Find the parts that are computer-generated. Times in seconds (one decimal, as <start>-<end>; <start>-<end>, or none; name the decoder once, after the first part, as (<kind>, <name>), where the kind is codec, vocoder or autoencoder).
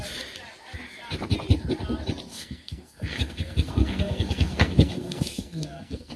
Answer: 2.3-6.2 (codec, SNAC)